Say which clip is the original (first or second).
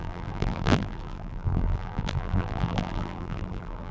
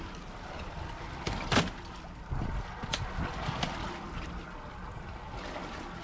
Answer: second